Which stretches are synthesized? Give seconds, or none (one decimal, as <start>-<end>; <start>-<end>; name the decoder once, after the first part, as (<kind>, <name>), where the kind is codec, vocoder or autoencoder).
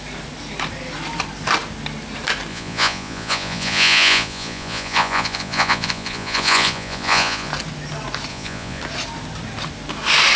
2.5-7.5 (vocoder, Vocos); 8.3-8.8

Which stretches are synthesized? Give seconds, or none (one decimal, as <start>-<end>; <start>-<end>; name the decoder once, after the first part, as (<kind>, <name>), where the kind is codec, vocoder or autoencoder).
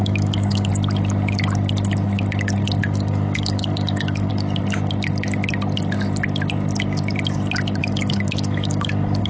0.0-0.7 (codec, DAC); 2.8-4.3; 7.8-9.3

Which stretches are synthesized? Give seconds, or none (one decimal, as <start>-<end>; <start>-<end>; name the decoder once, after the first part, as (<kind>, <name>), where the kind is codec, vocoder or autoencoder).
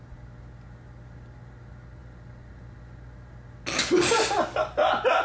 none